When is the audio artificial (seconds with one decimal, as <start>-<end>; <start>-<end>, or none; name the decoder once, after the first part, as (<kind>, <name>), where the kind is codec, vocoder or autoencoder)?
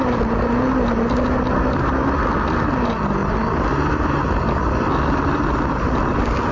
none